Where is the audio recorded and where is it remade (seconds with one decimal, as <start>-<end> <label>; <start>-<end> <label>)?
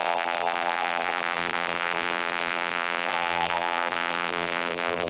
0.0-5.1 remade